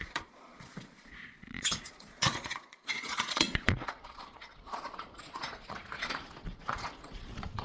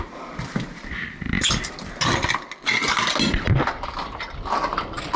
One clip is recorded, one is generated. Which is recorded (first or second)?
second